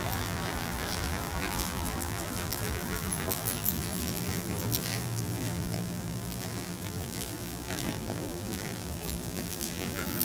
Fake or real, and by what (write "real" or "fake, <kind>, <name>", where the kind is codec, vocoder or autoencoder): fake, vocoder, BigVGAN v2